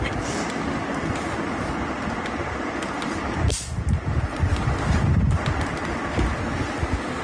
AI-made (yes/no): no